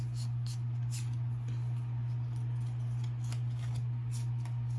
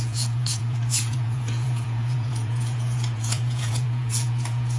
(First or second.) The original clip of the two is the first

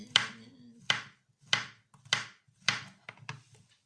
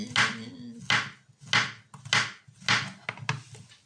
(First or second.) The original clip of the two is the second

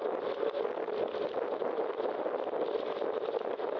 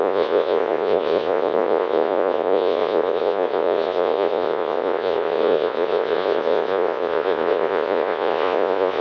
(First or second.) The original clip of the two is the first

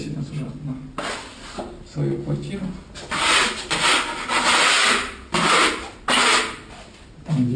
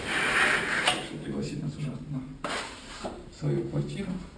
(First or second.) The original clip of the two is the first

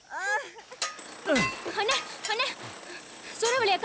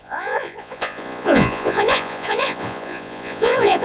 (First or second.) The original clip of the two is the first